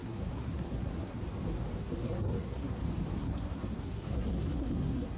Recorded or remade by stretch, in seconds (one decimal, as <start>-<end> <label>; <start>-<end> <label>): 0.0-1.2 remade; 1.2-1.8 recorded; 1.8-2.8 remade; 2.8-3.2 recorded; 3.2-5.2 remade